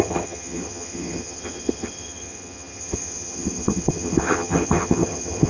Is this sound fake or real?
fake